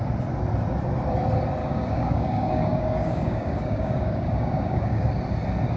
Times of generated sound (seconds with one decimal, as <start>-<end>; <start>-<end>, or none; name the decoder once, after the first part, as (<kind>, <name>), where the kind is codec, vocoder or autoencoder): 1.6-5.1 (codec, DAC)